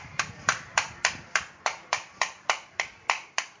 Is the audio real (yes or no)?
no